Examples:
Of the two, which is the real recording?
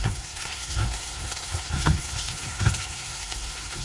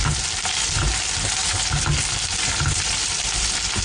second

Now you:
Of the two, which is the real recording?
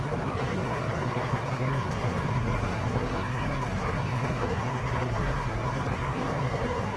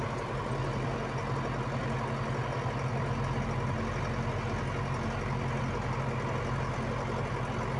second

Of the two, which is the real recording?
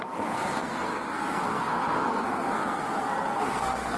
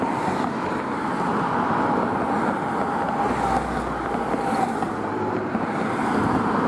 second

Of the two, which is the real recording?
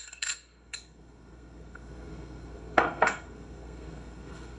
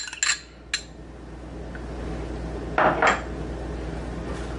second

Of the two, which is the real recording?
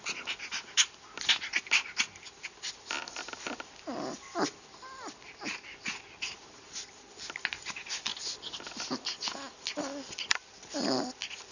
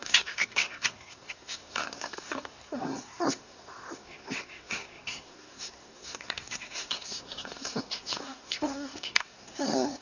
first